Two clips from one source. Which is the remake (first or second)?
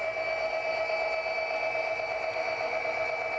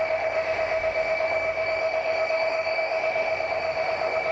second